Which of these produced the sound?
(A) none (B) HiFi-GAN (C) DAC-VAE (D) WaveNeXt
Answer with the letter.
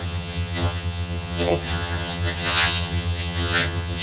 B